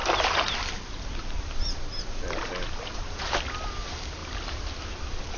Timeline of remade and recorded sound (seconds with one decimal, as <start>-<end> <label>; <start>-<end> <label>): 0.0-5.4 recorded